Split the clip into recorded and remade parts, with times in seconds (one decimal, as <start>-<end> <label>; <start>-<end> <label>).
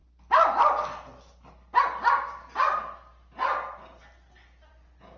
0.0-5.2 recorded